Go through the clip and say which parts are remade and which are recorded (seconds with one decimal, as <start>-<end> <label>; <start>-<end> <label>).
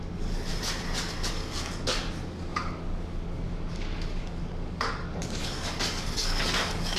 0.0-0.5 remade; 0.5-1.3 recorded; 1.3-7.0 remade